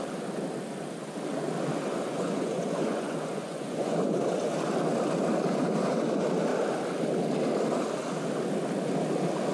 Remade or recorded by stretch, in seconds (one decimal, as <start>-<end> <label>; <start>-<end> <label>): 0.0-1.9 recorded; 1.9-4.4 remade; 4.4-9.5 recorded